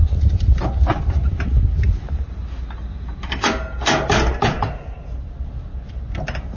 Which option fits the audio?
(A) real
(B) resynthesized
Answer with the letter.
A